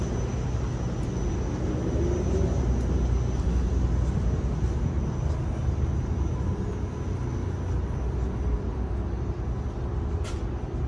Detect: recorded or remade recorded